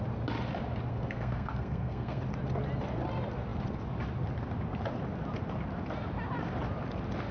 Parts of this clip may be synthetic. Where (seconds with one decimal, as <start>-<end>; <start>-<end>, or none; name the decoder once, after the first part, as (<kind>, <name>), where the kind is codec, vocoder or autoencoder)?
0.9-2.2 (codec, SNAC)

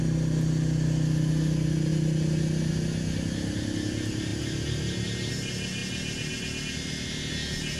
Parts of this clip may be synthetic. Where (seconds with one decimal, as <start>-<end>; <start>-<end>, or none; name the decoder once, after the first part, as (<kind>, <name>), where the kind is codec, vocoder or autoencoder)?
none